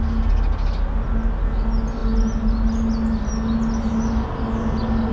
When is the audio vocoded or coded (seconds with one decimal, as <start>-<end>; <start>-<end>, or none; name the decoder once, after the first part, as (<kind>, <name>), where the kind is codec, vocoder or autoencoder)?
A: none